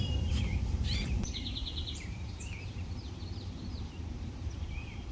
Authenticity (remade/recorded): remade